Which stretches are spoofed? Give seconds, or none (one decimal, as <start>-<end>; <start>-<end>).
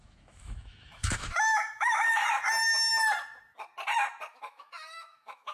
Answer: 0.0-2.2; 4.3-5.5